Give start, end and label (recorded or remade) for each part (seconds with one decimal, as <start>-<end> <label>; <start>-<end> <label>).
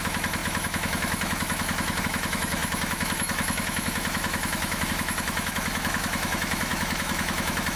0.0-7.8 remade